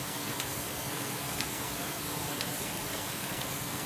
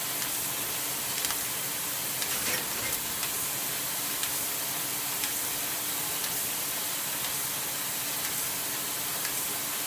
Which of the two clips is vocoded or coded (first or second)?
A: first